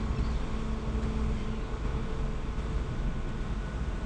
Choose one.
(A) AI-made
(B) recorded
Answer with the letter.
B